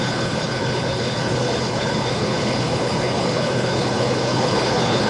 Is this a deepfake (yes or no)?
yes